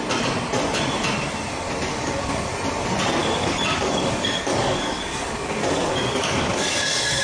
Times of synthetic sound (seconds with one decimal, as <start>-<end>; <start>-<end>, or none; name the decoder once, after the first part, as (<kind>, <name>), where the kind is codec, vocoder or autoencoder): 1.9-2.5 (codec, DAC); 3.2-7.2